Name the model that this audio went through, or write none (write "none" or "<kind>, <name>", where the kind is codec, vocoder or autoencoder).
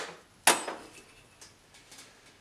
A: none